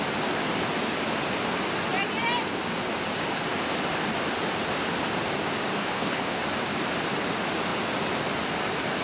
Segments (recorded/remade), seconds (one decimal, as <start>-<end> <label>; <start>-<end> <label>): 0.0-5.8 recorded; 5.8-6.4 remade; 6.4-9.0 recorded